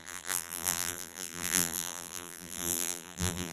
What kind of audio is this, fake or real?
fake